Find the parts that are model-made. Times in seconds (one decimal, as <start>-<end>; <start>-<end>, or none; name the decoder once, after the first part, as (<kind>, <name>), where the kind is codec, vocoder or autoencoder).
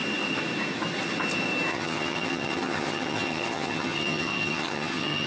1.7-5.3 (vocoder, HiFi-GAN)